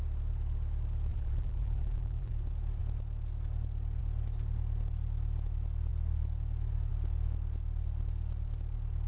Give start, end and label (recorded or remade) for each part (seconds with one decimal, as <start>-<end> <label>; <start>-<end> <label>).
0.0-1.1 recorded; 1.1-2.3 remade; 2.3-9.1 recorded